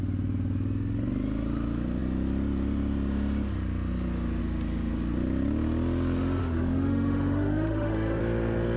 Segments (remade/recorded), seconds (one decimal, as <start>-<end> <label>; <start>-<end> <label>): 0.0-6.4 recorded; 6.4-8.2 remade; 8.2-8.8 recorded